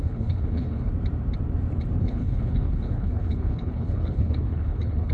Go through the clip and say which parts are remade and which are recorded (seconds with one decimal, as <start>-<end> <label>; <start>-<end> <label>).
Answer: 0.0-0.9 remade; 0.9-2.0 recorded; 2.0-5.1 remade